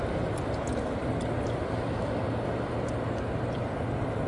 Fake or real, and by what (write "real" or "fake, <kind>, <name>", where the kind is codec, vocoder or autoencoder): real